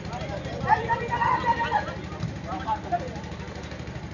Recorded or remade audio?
recorded